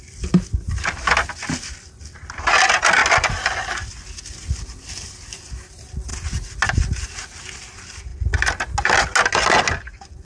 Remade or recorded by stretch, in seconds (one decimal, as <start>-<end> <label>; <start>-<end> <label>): 0.0-10.2 recorded